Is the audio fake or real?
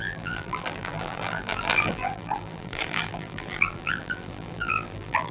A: fake